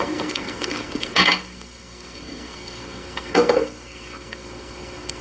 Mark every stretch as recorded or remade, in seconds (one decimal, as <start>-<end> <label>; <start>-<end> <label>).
0.0-5.2 remade

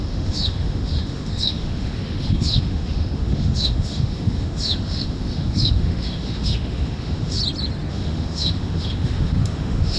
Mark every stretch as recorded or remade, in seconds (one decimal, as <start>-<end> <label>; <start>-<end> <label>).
0.0-7.4 remade; 7.4-7.9 recorded; 7.9-10.0 remade